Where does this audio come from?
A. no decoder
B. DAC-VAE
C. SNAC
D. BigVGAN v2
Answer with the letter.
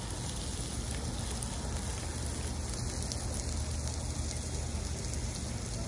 A